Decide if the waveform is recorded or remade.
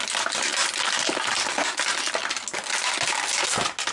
recorded